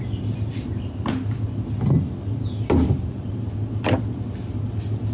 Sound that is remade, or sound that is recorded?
recorded